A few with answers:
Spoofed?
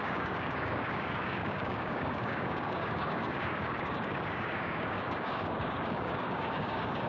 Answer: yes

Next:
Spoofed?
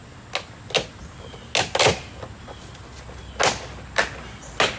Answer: no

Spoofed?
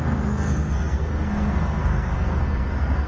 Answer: yes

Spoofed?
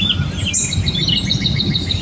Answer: no